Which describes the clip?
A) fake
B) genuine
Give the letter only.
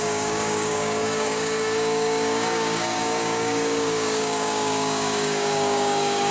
A